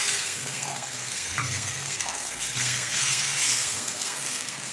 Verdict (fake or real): fake